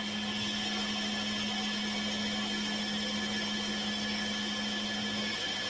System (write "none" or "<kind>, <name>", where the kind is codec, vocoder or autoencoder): none